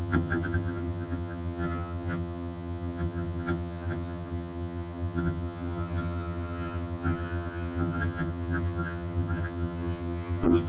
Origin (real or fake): fake